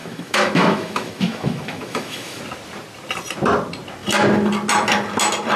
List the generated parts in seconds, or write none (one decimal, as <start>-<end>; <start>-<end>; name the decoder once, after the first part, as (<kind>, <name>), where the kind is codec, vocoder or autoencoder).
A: 0.0-2.4 (autoencoder, DAC-VAE)